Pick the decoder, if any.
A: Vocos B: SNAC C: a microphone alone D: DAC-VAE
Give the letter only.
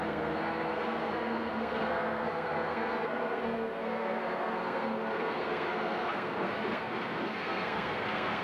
B